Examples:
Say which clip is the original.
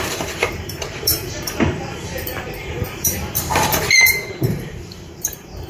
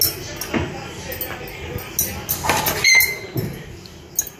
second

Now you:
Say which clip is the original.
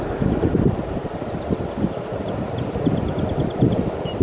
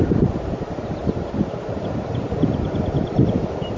first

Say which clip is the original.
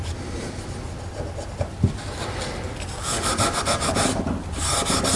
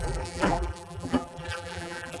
first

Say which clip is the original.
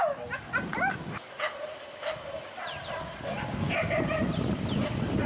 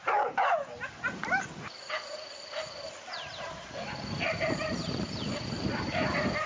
first